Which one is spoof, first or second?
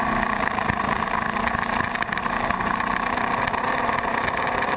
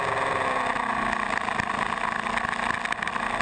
first